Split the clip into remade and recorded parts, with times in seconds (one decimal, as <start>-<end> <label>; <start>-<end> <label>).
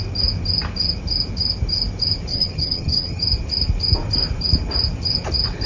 0.0-2.3 recorded; 2.3-3.2 remade; 3.2-5.7 recorded